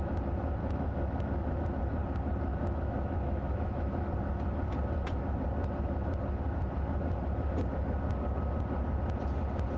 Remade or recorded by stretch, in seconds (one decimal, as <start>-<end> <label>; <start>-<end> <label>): 0.0-0.6 recorded; 0.6-1.6 remade; 1.6-2.5 recorded; 2.5-4.0 remade; 4.0-9.8 recorded